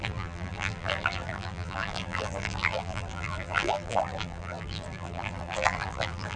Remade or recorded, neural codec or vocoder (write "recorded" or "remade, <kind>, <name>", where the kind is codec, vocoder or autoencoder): remade, vocoder, BigVGAN v2